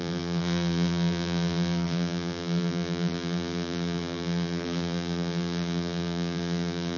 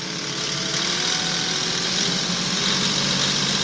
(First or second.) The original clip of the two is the second